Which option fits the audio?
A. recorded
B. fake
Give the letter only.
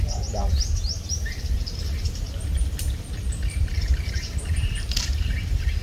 B